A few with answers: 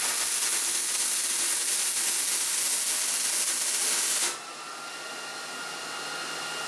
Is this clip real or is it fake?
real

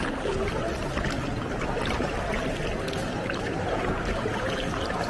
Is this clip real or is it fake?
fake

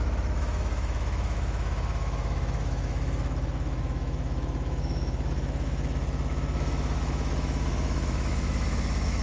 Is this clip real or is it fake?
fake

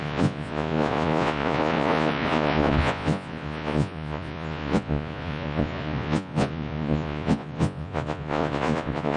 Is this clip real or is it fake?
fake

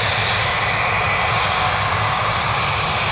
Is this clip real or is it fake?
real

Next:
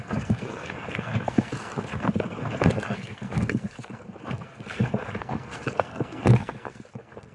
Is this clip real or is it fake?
fake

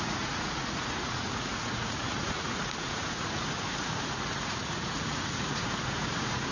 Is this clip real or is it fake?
fake